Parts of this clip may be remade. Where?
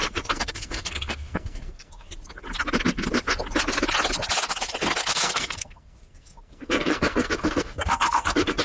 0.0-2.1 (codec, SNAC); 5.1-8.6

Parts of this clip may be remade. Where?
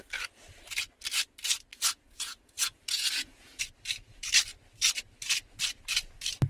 1.7-3.6 (vocoder, Vocos)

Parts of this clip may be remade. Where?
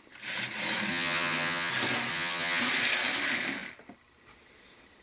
0.9-1.7 (vocoder, HiFi-GAN); 2.1-2.6